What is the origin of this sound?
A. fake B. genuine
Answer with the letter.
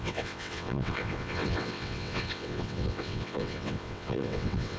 A